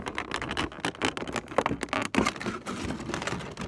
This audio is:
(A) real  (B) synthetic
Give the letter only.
A